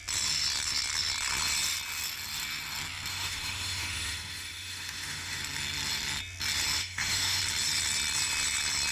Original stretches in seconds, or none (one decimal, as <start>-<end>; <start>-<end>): 0.0-3.1; 5.4-6.8; 7.4-8.9